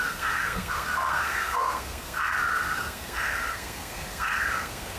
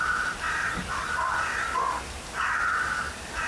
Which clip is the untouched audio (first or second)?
second